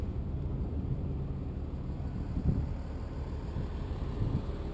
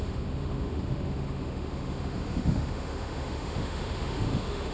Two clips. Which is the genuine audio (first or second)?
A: first